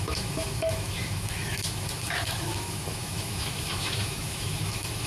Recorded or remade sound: remade